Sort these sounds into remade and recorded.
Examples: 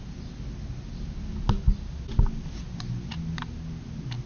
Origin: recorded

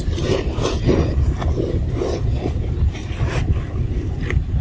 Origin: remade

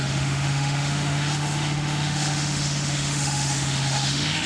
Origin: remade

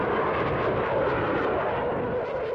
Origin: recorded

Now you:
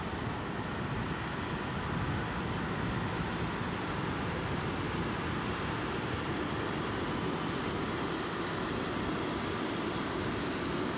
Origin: recorded